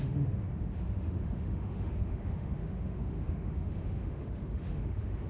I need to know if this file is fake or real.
fake